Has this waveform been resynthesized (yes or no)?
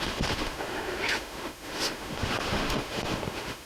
yes